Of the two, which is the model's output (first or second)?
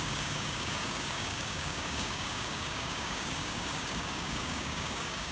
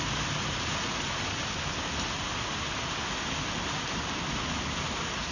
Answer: first